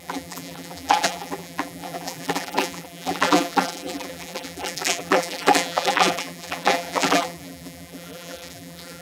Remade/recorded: remade